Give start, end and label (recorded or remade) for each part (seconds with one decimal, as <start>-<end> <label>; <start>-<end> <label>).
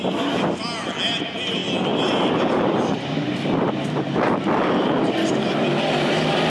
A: 0.0-6.5 recorded